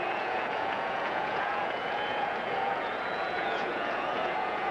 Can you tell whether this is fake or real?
fake